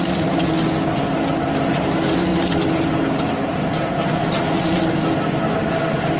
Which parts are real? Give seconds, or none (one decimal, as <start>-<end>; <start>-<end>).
0.0-6.2